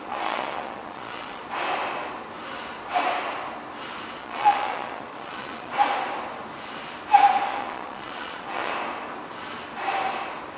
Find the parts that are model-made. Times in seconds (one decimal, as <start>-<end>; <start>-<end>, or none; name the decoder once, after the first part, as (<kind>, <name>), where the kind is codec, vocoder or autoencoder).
0.0-1.4 (vocoder, Vocos); 4.2-5.7; 7.5-8.7